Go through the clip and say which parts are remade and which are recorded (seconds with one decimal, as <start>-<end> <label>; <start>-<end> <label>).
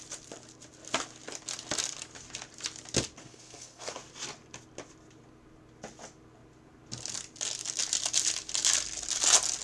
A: 0.0-3.2 recorded; 3.2-3.9 remade; 3.9-9.6 recorded